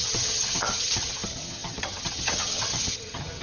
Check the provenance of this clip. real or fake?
fake